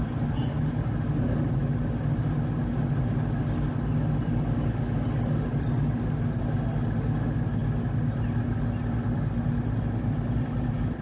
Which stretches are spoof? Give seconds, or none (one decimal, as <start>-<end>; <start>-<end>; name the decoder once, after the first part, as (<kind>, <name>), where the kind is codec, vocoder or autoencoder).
none